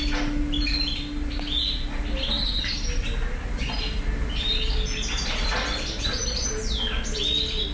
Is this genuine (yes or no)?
yes